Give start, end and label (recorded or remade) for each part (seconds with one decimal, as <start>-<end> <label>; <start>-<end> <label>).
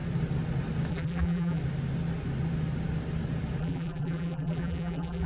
0.0-0.9 recorded; 0.9-1.6 remade; 1.6-3.6 recorded; 3.6-5.3 remade